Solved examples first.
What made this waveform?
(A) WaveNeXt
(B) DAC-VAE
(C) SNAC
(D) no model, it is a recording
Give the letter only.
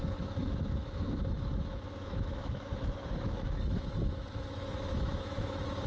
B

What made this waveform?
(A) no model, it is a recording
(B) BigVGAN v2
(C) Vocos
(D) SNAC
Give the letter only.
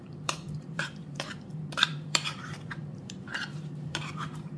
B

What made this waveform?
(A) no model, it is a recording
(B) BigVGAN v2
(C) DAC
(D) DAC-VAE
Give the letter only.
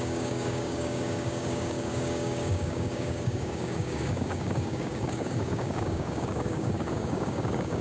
C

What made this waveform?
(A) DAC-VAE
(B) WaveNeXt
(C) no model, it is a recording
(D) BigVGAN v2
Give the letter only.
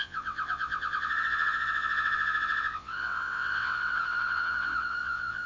B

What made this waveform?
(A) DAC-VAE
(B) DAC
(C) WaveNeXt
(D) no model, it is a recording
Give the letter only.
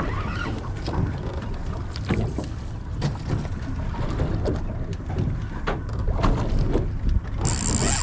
D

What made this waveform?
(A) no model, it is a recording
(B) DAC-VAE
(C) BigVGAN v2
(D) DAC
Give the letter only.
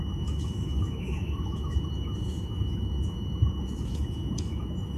B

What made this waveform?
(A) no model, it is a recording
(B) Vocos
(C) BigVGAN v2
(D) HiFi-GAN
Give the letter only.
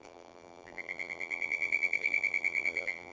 C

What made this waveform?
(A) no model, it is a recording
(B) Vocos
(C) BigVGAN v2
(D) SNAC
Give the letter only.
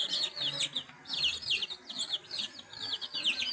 A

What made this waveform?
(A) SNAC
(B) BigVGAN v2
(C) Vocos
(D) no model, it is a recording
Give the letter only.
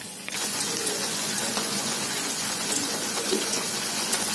C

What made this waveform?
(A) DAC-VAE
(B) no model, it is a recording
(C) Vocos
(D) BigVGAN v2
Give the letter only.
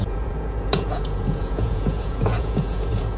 C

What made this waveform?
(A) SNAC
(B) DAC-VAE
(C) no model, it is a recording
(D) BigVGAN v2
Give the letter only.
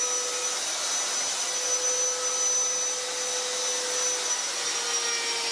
C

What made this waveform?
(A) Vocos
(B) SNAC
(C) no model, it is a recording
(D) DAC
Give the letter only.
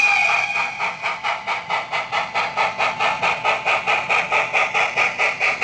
C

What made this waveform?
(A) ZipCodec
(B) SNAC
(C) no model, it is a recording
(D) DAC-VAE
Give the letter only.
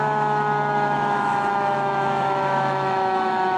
D